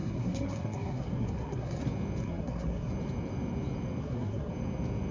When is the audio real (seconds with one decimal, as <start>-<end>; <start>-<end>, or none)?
1.8-2.2; 2.9-4.0; 4.5-5.1